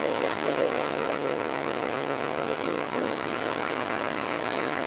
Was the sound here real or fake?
fake